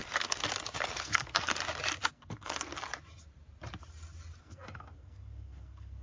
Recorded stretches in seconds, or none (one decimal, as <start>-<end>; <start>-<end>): 0.4-1.0; 1.6-2.1; 2.7-4.4